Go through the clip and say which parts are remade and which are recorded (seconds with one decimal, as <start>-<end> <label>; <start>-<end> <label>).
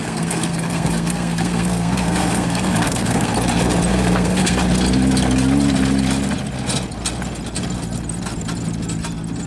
0.0-3.3 remade; 3.3-3.9 recorded; 3.9-4.6 remade; 4.6-9.5 recorded